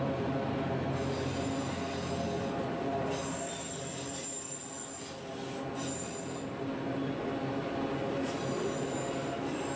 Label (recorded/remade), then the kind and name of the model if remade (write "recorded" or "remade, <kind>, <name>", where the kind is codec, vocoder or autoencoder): recorded